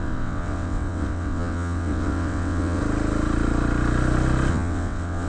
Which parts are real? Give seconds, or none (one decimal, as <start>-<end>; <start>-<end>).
2.8-4.5